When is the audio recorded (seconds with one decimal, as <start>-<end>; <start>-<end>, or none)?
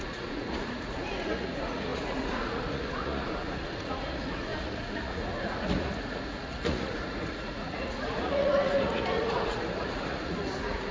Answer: none